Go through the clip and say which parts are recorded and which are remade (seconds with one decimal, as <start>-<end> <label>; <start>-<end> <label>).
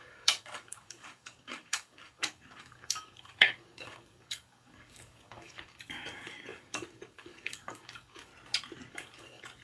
0.0-8.3 remade; 8.3-8.9 recorded; 8.9-9.6 remade